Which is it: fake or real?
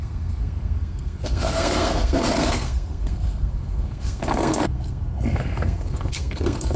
fake